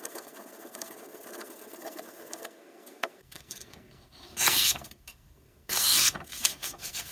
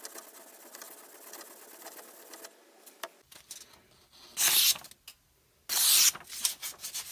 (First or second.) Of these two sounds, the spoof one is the first